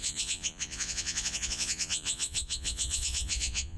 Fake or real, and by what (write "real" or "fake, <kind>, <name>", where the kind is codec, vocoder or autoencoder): fake, vocoder, Vocos